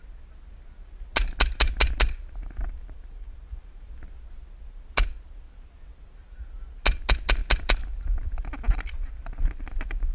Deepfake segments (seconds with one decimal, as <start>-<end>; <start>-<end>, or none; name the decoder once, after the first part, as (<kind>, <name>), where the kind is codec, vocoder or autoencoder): none